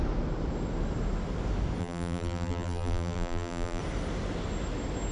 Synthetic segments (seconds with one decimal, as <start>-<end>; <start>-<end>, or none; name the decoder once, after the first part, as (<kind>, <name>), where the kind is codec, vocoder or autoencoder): 1.8-3.8 (vocoder, BigVGAN v2)